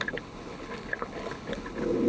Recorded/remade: remade